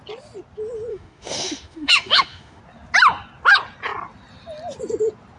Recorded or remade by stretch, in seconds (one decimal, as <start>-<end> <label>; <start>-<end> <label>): 0.0-0.9 recorded; 0.9-2.6 remade; 2.6-5.4 recorded

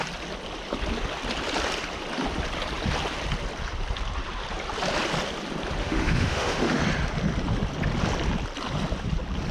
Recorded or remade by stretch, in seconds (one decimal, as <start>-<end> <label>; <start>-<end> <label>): 0.0-5.8 recorded; 5.8-6.8 remade; 6.8-9.5 recorded

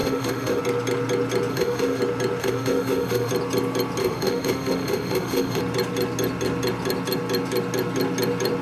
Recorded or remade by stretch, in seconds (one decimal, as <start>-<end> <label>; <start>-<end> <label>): 0.0-0.6 remade; 0.6-1.5 recorded; 1.5-2.0 remade; 2.0-2.4 recorded; 2.4-3.3 remade; 3.3-4.0 recorded; 4.0-5.6 remade; 5.6-8.6 recorded

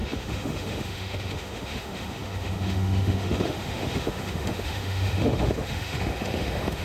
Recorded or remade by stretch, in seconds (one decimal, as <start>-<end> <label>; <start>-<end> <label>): 0.0-6.8 remade

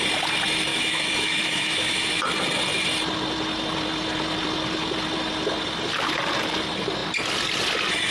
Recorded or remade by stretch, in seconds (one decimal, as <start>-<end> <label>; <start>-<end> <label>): 0.0-0.7 recorded; 0.7-2.2 remade; 2.2-8.1 recorded

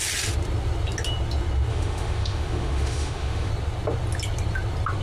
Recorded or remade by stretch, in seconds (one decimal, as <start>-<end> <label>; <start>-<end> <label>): 0.0-1.7 recorded; 1.7-3.5 remade; 3.5-5.0 recorded